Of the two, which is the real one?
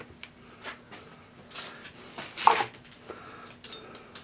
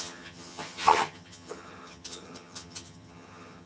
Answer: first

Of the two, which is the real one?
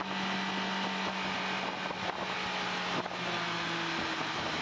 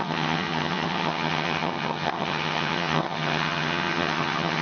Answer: first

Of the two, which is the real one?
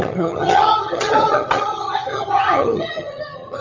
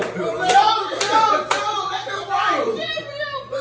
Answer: second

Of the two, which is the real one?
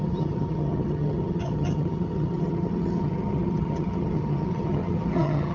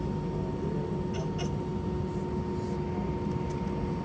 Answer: second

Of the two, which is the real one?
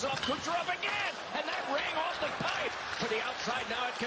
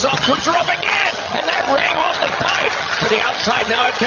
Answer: first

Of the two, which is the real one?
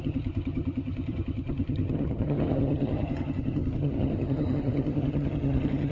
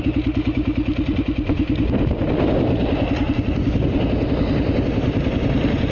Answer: second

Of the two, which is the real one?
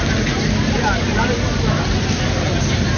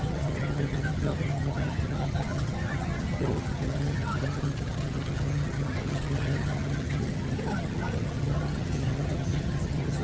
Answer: first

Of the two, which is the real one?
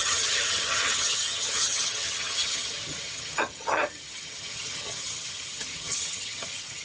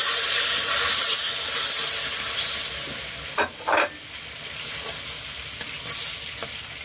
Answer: second